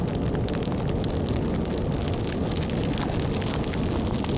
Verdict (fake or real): real